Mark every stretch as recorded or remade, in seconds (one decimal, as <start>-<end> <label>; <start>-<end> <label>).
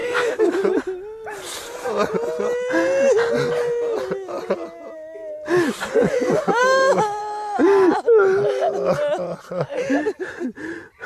0.0-0.6 remade; 0.6-6.6 recorded; 6.6-7.2 remade; 7.2-11.1 recorded